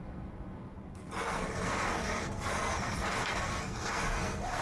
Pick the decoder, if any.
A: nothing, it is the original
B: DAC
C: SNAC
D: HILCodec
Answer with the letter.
C